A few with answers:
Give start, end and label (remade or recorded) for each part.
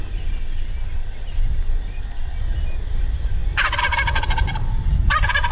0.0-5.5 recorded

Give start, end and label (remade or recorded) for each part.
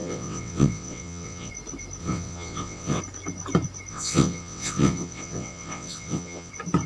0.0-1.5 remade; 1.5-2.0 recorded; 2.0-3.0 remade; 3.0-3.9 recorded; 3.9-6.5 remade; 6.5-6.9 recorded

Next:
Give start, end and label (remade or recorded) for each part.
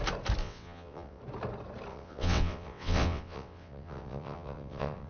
0.0-0.4 recorded; 0.4-1.2 remade; 1.2-1.9 recorded; 1.9-5.1 remade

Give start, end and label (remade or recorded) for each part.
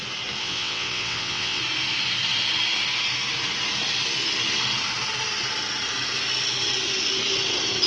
0.0-0.4 recorded; 0.4-1.6 remade; 1.6-7.9 recorded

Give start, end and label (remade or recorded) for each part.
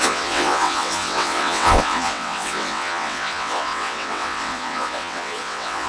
0.0-5.9 remade